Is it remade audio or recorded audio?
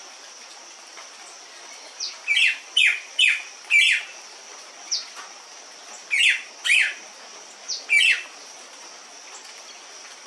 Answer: recorded